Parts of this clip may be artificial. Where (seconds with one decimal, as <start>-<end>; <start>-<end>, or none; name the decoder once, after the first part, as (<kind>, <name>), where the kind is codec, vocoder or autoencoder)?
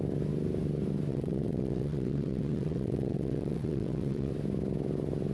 1.1-4.3 (vocoder, WaveNeXt)